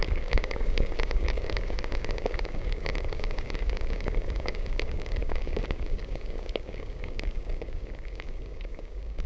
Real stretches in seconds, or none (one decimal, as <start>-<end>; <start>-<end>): none